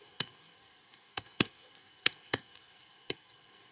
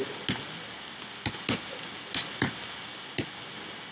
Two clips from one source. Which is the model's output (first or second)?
first